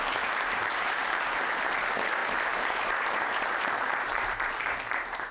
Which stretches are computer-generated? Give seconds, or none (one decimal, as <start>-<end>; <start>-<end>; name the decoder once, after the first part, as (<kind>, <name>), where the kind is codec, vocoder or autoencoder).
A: 0.0-5.3 (vocoder, BigVGAN v2)